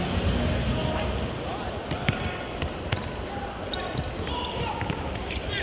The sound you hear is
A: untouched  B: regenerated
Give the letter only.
A